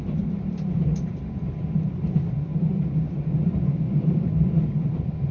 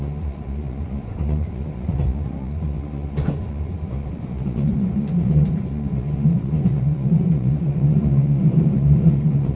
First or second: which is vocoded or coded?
second